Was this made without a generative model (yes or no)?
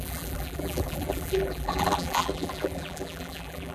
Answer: no